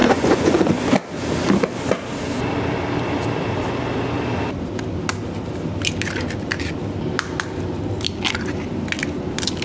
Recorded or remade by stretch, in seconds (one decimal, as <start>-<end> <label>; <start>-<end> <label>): 0.0-0.7 remade; 0.7-9.6 recorded